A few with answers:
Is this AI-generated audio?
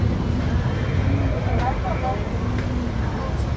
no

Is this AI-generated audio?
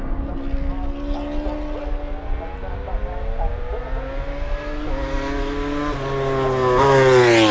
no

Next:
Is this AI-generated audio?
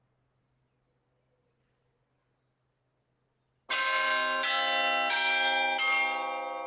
no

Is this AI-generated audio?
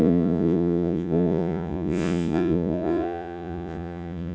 yes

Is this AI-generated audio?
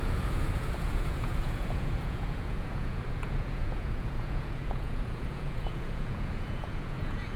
yes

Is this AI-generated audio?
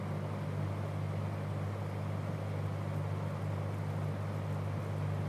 no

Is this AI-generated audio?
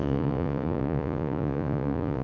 yes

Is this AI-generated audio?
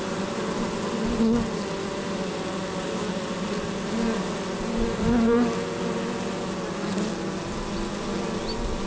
no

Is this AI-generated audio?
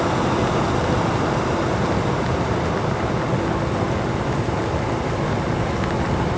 no